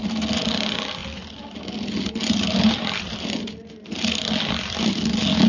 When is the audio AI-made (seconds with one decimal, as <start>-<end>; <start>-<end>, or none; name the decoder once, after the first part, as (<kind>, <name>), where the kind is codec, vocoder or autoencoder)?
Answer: none